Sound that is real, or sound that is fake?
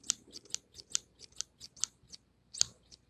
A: real